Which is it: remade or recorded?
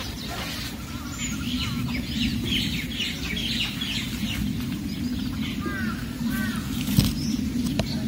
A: recorded